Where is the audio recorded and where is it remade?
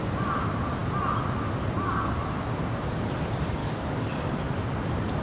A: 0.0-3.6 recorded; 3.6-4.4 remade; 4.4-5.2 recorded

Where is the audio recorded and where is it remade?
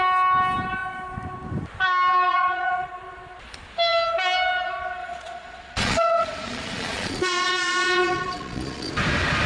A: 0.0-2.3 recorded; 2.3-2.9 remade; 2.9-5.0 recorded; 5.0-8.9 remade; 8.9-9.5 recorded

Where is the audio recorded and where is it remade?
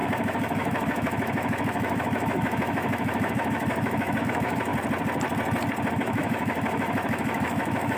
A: 0.0-4.7 remade; 4.7-5.9 recorded; 5.9-8.0 remade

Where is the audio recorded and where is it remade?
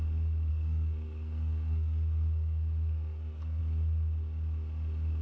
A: 0.0-0.5 recorded; 0.5-3.6 remade; 3.6-5.2 recorded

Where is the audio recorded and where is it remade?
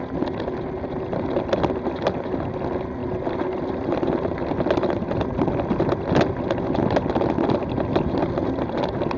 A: 0.0-9.2 recorded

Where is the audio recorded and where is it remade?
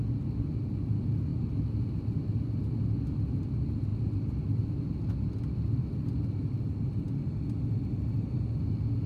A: 0.0-9.1 recorded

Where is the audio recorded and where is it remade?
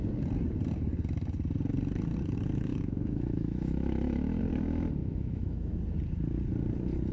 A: 0.0-2.7 recorded; 2.7-4.4 remade; 4.4-5.0 recorded; 5.0-5.8 remade; 5.8-7.1 recorded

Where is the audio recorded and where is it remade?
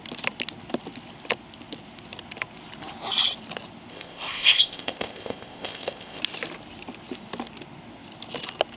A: 0.0-3.9 recorded; 3.9-6.2 remade; 6.2-8.8 recorded